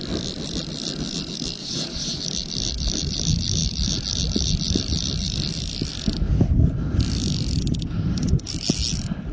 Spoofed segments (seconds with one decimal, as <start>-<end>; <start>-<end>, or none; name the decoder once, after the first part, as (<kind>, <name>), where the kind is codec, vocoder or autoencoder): 1.6-2.2 (vocoder, Vocos)

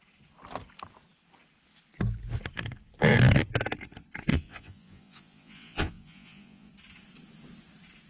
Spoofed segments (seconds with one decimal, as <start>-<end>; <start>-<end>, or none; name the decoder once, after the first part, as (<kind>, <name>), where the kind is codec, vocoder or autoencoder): 4.3-6.7 (vocoder, Vocos)

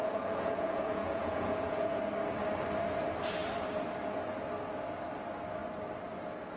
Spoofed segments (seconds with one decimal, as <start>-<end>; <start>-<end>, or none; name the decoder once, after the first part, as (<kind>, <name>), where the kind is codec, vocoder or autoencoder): 0.0-2.0 (vocoder, Vocos)

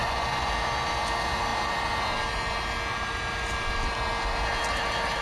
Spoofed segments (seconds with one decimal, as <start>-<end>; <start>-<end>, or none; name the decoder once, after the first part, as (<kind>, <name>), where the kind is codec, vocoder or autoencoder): 0.0-0.5 (vocoder, Vocos)

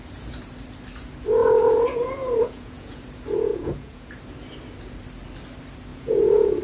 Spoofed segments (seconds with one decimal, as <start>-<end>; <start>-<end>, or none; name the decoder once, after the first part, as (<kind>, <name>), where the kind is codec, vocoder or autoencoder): 1.4-3.0 (vocoder, Vocos); 3.5-4.1; 5.9-6.6